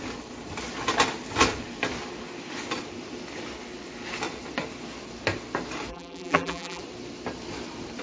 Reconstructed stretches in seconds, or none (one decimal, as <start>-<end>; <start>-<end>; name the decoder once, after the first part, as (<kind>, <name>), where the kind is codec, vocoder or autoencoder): 5.9-6.8 (vocoder, BigVGAN v2)